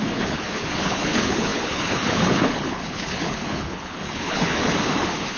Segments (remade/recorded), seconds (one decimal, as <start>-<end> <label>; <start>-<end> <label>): 0.0-5.4 remade